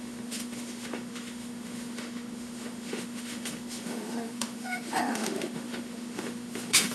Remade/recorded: remade